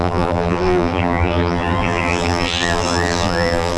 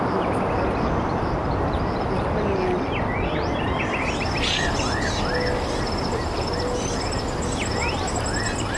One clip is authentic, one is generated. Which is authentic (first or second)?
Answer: second